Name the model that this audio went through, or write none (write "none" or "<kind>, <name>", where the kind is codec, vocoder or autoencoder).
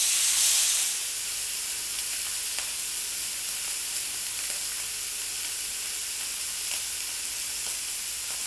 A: none